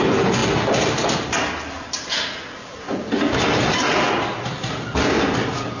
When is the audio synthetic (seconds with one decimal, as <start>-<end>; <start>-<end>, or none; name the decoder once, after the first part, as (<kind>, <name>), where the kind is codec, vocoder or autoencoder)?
none